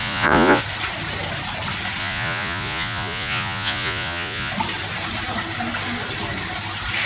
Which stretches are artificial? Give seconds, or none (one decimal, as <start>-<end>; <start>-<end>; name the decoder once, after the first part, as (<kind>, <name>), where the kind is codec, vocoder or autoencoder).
0.0-0.6 (vocoder, Vocos); 2.0-4.5